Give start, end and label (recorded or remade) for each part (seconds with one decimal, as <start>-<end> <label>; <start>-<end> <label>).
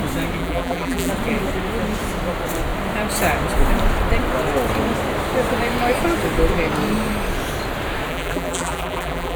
0.0-0.4 recorded; 0.4-1.1 remade; 1.1-8.1 recorded; 8.1-9.4 remade